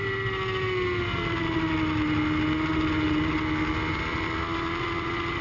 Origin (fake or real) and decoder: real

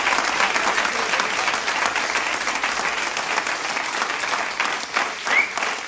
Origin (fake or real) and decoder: real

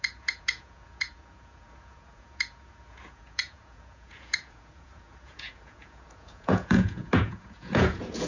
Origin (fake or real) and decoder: fake, vocoder, Vocos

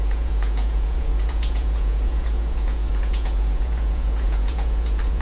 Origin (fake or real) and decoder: fake, vocoder, Vocos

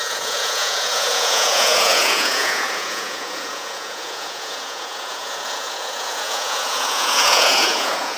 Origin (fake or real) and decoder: fake, vocoder, Vocos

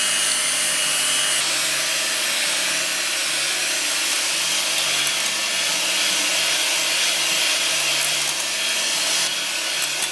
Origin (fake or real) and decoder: real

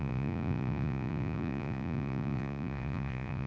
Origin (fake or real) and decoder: fake, vocoder, Vocos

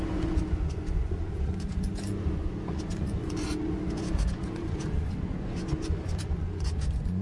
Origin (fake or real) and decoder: fake, vocoder, Vocos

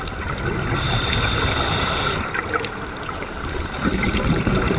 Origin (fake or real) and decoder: real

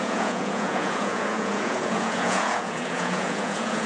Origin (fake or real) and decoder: fake, vocoder, Vocos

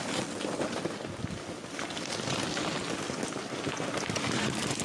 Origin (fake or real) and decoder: real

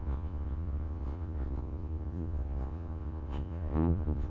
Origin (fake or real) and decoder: fake, vocoder, Vocos